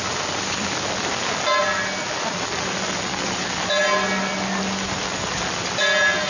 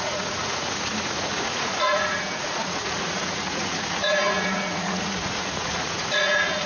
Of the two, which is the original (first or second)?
first